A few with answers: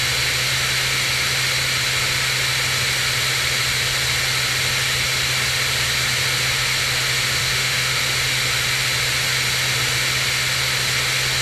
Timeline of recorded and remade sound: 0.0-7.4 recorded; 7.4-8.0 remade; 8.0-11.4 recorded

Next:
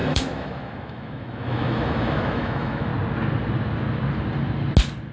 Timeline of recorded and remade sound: 0.0-2.9 remade; 2.9-5.1 recorded

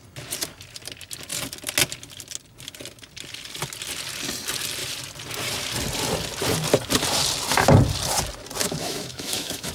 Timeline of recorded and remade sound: 0.0-8.6 recorded; 8.6-9.7 remade

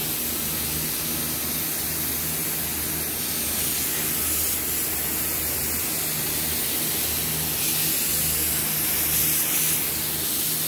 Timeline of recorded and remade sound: 0.0-10.7 recorded

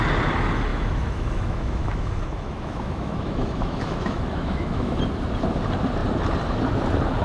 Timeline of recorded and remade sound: 0.0-0.7 recorded; 0.7-5.0 remade; 5.0-7.2 recorded

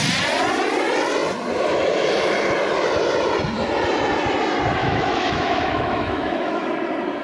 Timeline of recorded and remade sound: 0.0-4.8 recorded; 4.8-6.7 remade; 6.7-7.2 recorded